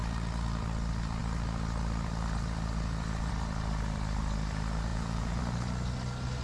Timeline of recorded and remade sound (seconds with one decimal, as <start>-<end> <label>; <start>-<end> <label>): 0.0-4.9 recorded; 4.9-5.4 remade; 5.4-6.4 recorded